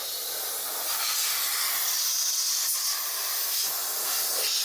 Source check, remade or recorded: recorded